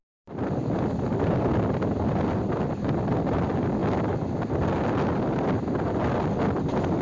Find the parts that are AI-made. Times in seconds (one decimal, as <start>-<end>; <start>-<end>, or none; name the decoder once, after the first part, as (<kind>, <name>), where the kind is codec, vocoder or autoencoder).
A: none